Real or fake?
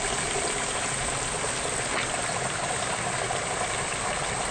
fake